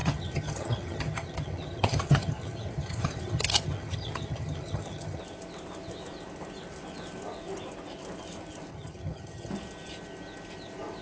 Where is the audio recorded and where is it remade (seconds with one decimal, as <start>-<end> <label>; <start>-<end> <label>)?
0.0-5.2 remade; 5.2-8.7 recorded; 8.7-9.5 remade; 9.5-11.0 recorded